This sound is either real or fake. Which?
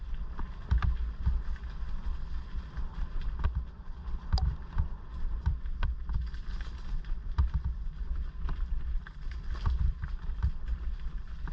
real